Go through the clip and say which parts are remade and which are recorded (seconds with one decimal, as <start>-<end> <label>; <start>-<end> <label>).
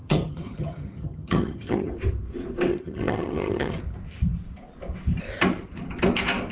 0.0-1.9 remade; 1.9-2.7 recorded; 2.7-3.8 remade; 3.8-6.5 recorded